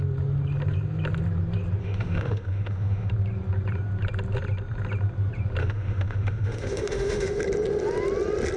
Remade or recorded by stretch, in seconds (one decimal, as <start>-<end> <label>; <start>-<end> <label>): 0.0-1.8 recorded; 1.8-3.1 remade; 3.1-5.6 recorded; 5.6-7.4 remade; 7.4-8.6 recorded